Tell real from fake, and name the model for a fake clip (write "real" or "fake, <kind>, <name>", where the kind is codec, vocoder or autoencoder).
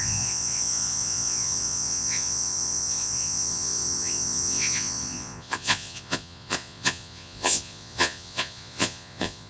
fake, vocoder, Vocos